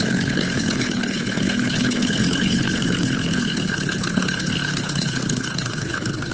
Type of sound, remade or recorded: remade